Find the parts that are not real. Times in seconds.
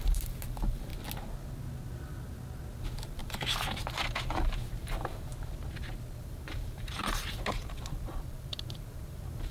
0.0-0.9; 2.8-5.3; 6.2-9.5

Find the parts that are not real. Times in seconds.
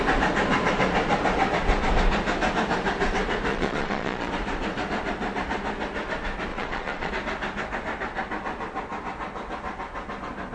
3.5-4.3; 6.5-7.1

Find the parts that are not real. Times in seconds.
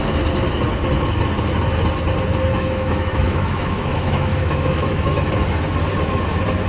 2.5-5.2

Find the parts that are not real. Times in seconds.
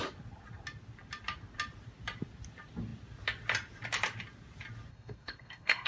4.9-5.9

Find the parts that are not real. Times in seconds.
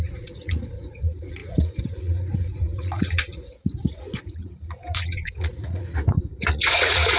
0.0-7.2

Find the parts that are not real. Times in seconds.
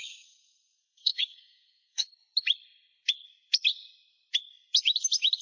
0.0-2.1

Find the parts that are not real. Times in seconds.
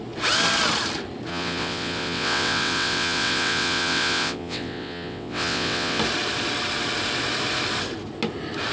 1.3-6.0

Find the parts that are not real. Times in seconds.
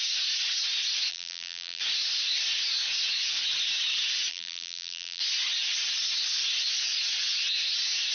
1.1-1.8; 4.3-5.2